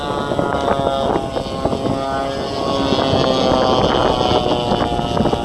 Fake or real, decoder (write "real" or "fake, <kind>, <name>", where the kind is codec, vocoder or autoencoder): real